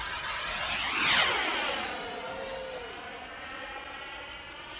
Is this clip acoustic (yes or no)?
yes